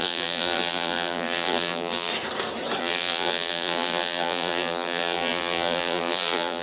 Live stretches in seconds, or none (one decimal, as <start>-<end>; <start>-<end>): 2.1-2.8